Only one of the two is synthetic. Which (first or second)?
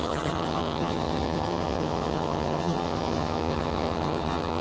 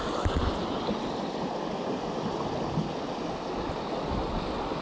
first